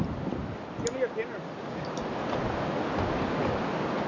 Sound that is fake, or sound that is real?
real